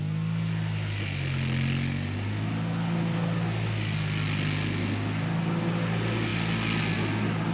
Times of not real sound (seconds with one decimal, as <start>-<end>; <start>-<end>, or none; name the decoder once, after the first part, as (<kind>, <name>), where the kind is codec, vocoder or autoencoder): none